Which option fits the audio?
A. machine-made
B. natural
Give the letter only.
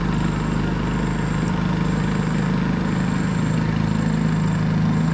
B